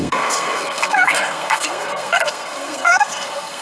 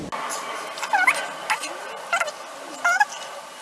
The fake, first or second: first